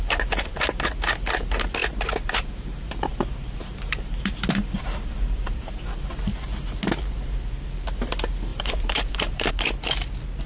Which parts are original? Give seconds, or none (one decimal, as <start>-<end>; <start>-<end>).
0.0-1.8; 6.2-8.5; 9.5-10.5